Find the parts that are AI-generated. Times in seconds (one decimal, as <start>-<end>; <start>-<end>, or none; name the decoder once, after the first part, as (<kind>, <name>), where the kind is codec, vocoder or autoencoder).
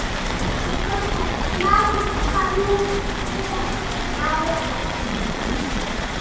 0.7-2.1 (vocoder, Vocos); 4.8-6.2